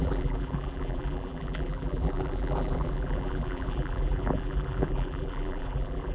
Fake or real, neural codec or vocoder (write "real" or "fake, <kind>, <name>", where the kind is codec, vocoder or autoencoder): fake, vocoder, BigVGAN v2